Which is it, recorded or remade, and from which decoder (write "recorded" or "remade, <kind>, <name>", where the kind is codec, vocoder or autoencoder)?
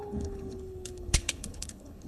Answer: remade, codec, HILCodec